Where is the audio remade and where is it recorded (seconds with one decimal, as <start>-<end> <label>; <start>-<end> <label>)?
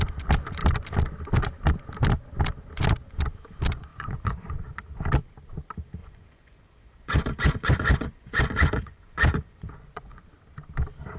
0.0-3.9 recorded; 3.9-4.5 remade; 4.5-6.0 recorded; 6.0-10.2 remade; 10.2-11.2 recorded